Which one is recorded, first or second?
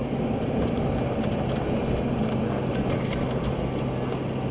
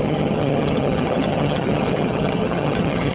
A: first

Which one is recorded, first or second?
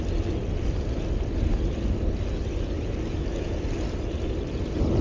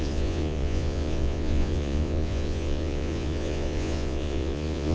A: first